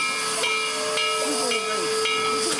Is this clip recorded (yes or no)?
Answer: yes